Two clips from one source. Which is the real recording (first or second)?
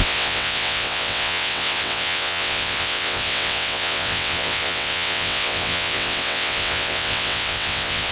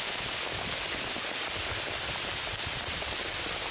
second